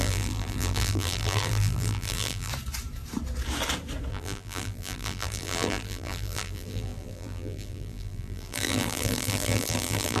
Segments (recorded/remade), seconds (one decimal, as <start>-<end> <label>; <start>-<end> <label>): 0.0-2.5 remade; 2.5-4.1 recorded; 4.1-10.2 remade